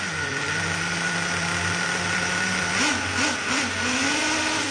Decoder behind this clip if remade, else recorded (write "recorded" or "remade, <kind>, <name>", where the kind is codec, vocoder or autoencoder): recorded